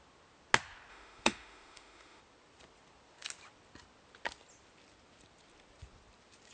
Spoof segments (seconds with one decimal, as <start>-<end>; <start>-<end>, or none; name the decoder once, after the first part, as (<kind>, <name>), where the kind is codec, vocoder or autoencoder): 0.9-2.2 (autoencoder, DAC-VAE)